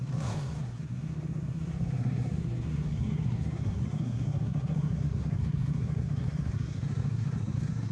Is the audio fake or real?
fake